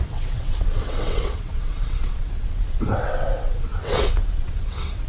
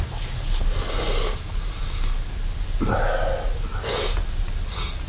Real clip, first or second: second